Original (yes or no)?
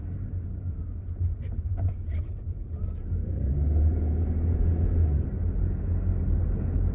yes